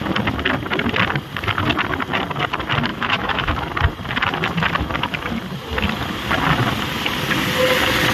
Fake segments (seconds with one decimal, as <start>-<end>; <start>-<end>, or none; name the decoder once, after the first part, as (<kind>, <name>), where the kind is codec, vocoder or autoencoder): 2.9-3.5 (autoencoder, DAC-VAE)